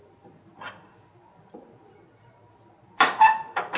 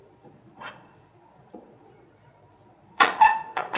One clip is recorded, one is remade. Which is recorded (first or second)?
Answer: first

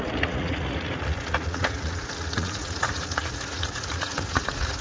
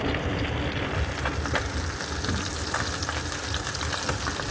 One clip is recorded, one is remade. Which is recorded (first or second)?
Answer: second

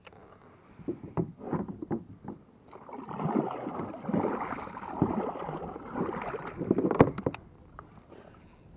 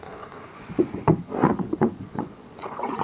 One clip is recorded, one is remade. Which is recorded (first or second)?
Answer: first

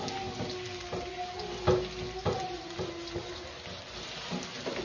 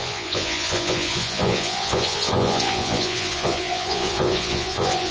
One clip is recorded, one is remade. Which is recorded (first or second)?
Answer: first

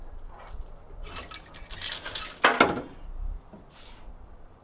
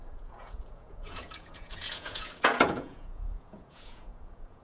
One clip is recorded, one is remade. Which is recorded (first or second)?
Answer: first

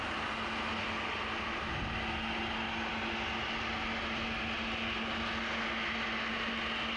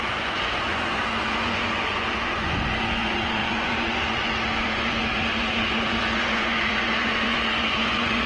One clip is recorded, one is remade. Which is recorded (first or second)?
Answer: first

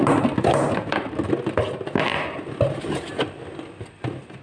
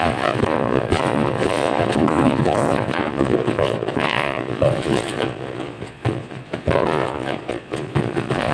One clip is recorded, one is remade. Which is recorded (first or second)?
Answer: first